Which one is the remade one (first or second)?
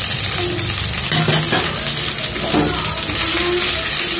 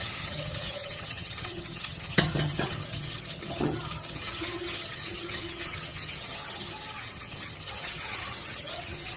second